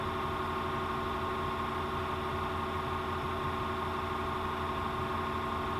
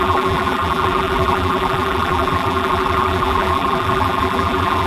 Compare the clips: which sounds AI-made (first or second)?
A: second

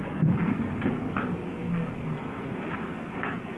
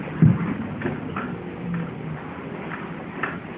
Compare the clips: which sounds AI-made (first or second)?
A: first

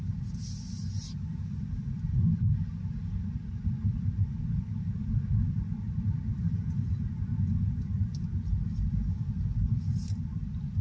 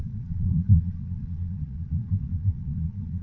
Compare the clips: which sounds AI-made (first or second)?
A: second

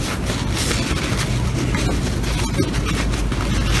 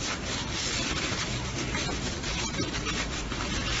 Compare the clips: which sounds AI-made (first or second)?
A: second